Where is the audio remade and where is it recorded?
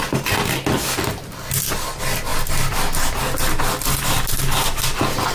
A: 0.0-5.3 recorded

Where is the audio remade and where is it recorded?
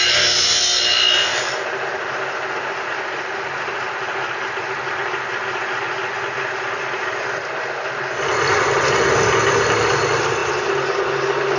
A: 0.0-11.6 recorded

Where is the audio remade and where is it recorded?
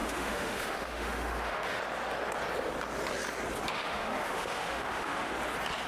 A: 0.0-1.8 remade; 1.8-3.7 recorded; 3.7-5.3 remade; 5.3-5.9 recorded